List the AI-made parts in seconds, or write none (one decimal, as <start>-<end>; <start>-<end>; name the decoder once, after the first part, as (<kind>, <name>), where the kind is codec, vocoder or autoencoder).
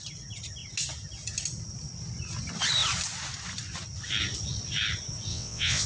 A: 5.3-5.9 (vocoder, WaveNeXt)